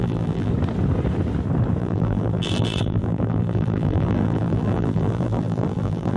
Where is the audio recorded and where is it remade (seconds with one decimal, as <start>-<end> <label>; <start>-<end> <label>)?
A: 0.0-0.5 remade; 0.5-1.8 recorded; 1.8-6.2 remade